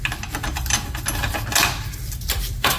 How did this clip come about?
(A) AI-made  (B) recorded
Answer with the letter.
B